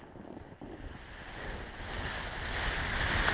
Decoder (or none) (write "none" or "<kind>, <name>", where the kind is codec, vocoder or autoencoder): none